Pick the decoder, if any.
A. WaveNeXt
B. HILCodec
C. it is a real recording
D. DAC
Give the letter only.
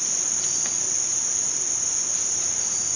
C